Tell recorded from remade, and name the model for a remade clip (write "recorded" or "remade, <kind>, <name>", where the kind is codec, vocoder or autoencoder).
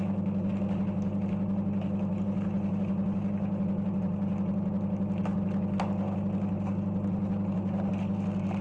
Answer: recorded